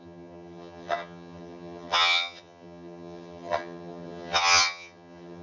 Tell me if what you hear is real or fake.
fake